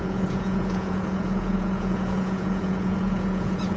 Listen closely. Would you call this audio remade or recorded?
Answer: remade